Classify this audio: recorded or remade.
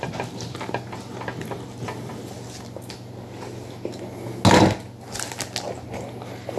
recorded